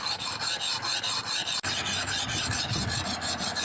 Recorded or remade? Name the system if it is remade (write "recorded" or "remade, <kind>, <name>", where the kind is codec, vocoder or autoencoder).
recorded